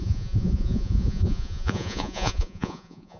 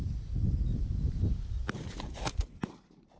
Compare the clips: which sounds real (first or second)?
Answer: second